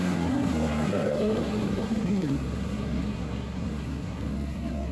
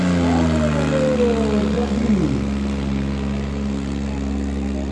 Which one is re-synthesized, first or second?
first